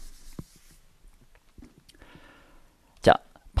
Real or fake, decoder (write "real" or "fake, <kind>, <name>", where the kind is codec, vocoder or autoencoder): real